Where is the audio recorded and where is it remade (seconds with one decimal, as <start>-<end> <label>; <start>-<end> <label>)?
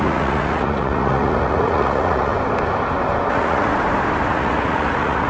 0.0-2.3 remade; 2.3-3.3 recorded; 3.3-3.7 remade; 3.7-4.3 recorded; 4.3-5.3 remade